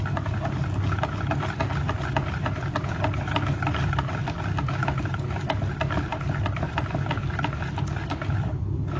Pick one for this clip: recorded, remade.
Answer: recorded